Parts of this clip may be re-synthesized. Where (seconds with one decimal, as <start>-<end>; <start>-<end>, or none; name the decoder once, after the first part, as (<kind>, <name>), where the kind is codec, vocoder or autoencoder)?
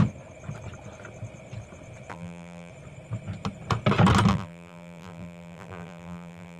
2.1-2.7 (vocoder, BigVGAN v2); 4.3-6.6